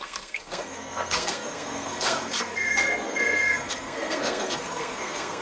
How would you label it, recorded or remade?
remade